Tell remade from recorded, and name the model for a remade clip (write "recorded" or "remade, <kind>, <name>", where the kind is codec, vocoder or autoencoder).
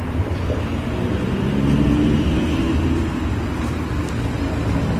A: recorded